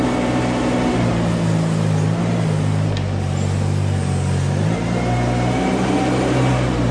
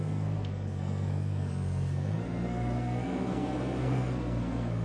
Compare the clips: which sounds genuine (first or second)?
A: first